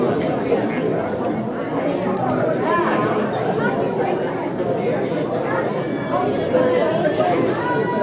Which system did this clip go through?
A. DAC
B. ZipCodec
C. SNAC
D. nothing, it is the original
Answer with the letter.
D